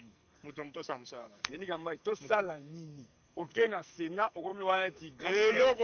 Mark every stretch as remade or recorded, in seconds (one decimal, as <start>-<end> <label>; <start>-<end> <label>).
0.0-5.8 remade